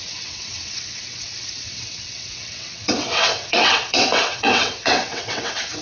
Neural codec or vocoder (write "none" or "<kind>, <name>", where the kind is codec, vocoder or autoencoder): vocoder, WaveNeXt